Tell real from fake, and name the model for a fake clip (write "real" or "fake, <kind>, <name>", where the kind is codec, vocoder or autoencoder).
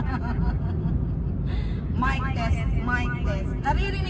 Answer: real